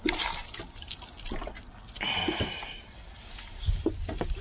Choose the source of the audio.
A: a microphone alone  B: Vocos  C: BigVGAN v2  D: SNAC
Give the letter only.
A